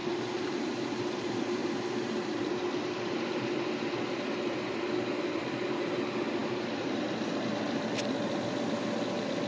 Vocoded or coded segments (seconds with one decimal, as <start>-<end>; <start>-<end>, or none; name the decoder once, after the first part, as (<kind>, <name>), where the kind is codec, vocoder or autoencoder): 0.0-1.7 (vocoder, BigVGAN v2); 2.3-3.9